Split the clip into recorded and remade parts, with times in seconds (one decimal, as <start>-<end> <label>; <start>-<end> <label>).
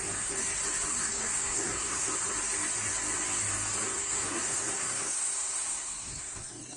0.0-0.9 recorded; 0.9-2.1 remade; 2.1-3.9 recorded; 3.9-6.8 remade